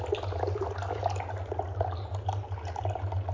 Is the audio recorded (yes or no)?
yes